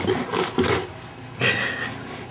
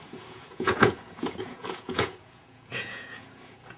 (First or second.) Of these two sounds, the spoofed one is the second